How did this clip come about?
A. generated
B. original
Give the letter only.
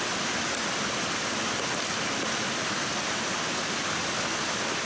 B